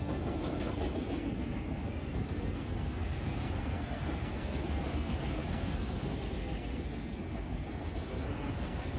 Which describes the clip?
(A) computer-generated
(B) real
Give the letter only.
A